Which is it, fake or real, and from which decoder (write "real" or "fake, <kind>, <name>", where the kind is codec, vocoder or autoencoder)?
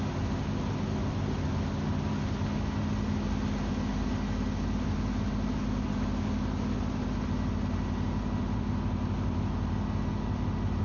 real